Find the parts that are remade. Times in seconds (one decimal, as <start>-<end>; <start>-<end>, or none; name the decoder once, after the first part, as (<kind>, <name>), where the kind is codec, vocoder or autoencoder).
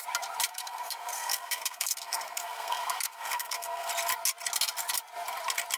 0.5-3.9 (codec, SNAC)